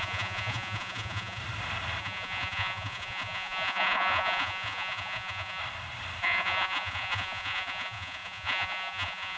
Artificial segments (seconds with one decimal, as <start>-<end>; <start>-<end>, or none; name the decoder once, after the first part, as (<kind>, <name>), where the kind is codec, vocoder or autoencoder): 0.0-1.4 (vocoder, Vocos); 2.0-5.6; 6.2-9.4